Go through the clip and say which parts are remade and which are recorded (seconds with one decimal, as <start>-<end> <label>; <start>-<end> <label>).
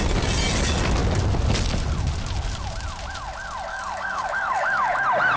0.0-3.7 recorded; 3.7-5.0 remade; 5.0-5.4 recorded